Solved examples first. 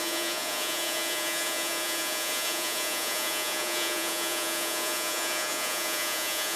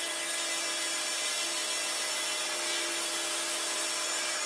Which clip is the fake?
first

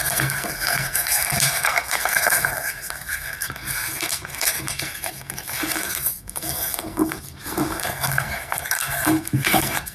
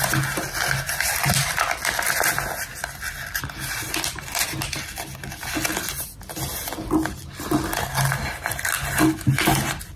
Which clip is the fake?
first